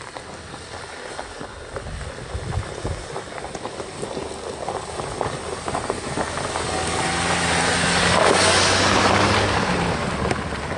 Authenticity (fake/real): real